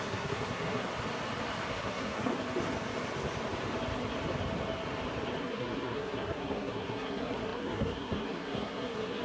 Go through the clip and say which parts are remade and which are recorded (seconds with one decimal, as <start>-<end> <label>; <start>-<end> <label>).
0.0-0.9 remade; 0.9-1.7 recorded; 1.7-2.3 remade; 2.3-5.4 recorded; 5.4-9.2 remade